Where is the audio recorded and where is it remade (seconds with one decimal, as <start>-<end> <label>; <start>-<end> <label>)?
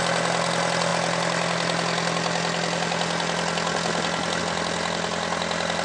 0.0-5.8 recorded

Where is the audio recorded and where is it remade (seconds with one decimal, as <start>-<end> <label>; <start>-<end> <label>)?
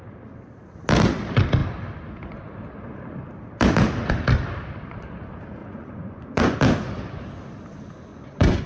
0.0-5.6 recorded; 5.6-6.6 remade; 6.6-8.1 recorded; 8.1-8.7 remade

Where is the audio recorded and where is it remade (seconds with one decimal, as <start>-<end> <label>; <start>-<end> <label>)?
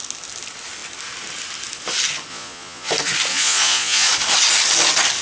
0.0-2.3 recorded; 2.3-2.9 remade; 2.9-3.3 recorded; 3.3-4.1 remade; 4.1-5.2 recorded